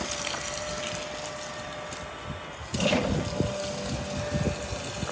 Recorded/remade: recorded